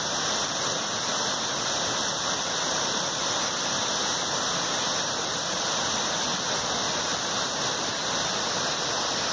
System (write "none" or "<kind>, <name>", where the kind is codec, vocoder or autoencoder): none